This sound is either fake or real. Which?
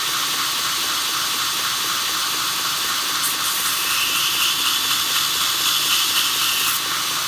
real